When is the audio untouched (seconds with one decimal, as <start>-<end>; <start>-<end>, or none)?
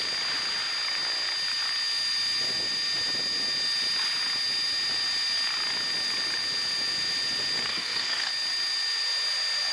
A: 0.0-7.7; 8.3-9.7